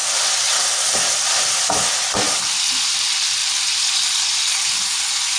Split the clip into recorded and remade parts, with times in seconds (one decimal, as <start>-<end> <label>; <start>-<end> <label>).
0.0-5.4 recorded

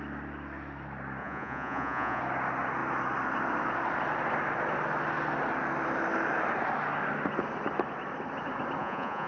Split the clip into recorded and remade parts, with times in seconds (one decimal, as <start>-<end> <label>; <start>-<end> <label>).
0.0-1.2 recorded; 1.2-2.2 remade; 2.2-8.8 recorded; 8.8-9.3 remade

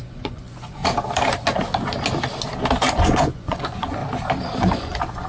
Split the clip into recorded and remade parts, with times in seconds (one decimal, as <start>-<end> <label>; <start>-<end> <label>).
0.0-0.8 remade; 0.8-2.9 recorded; 2.9-4.0 remade; 4.0-4.6 recorded; 4.6-5.3 remade

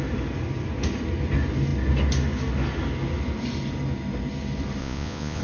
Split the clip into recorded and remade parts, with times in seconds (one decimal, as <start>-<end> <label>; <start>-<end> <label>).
0.0-4.8 recorded; 4.8-5.4 remade